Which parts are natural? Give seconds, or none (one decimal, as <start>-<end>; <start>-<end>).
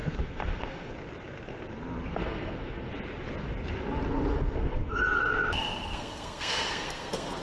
0.9-2.1; 2.9-4.3; 5.2-5.9